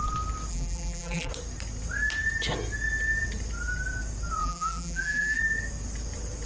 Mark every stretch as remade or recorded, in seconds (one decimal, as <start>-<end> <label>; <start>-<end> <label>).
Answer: 0.0-0.5 recorded; 0.5-1.3 remade; 1.3-4.4 recorded; 4.4-5.4 remade; 5.4-6.5 recorded